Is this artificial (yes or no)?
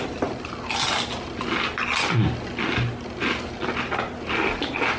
no